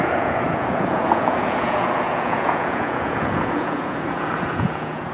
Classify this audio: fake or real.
fake